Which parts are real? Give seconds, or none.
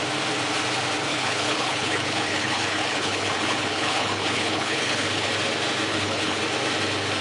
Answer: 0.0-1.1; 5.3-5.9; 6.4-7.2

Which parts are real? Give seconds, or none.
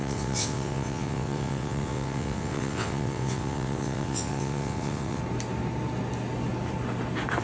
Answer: 5.2-7.4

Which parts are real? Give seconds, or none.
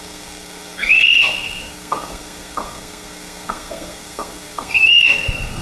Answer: none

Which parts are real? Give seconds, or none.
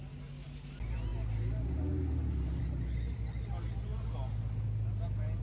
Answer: 0.0-5.4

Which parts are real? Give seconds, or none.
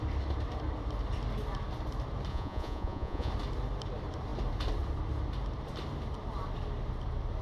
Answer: 0.0-2.3; 3.3-7.4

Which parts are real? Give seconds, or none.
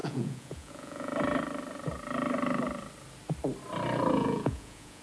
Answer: 1.1-4.1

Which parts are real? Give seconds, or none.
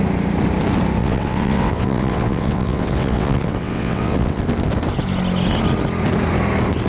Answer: 0.0-1.0; 4.4-6.9